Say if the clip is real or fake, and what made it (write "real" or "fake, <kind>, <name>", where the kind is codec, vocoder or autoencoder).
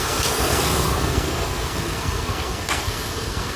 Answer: fake, codec, SNAC